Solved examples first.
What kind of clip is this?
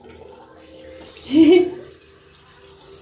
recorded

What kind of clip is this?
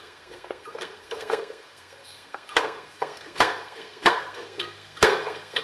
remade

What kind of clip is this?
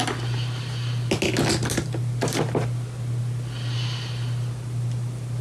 recorded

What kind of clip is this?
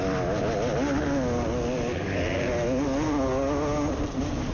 recorded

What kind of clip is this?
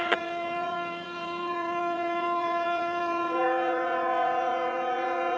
remade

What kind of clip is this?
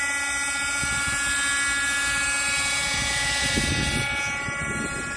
recorded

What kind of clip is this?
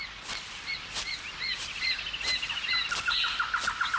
remade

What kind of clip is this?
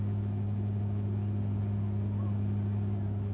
recorded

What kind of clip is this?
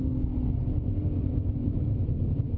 recorded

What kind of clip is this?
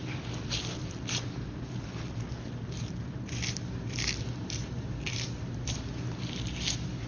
remade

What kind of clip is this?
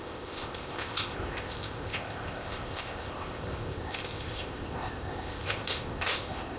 remade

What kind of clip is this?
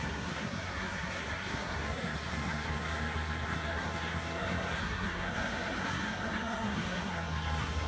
remade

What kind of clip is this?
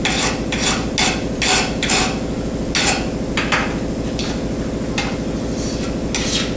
recorded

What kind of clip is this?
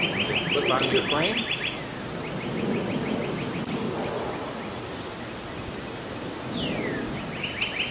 recorded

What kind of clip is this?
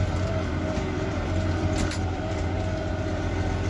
remade